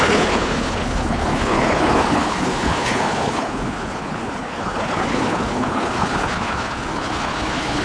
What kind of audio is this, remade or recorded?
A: remade